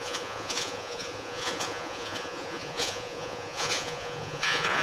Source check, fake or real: fake